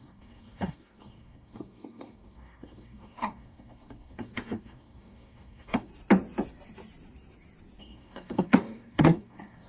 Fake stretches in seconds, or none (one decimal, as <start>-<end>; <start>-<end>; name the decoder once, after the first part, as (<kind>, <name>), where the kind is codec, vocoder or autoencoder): 0.0-5.9 (codec, SNAC); 7.8-9.7

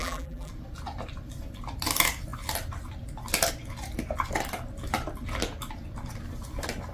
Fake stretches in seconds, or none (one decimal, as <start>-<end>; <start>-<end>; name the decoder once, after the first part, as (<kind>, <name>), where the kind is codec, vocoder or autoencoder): 0.0-0.5 (vocoder, BigVGAN v2)

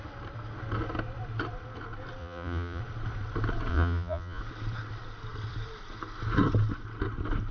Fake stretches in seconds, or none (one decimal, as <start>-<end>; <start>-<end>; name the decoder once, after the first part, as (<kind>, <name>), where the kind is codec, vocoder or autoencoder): 2.2-2.8 (vocoder, Vocos); 3.7-4.4

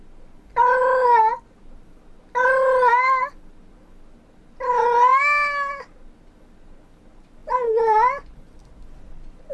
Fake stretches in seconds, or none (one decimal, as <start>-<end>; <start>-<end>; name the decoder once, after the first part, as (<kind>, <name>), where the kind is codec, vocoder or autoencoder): none